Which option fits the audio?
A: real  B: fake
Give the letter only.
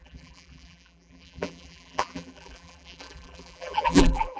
B